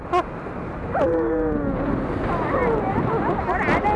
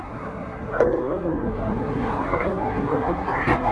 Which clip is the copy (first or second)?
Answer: second